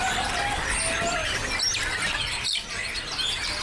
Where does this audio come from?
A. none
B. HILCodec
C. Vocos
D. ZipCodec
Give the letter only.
A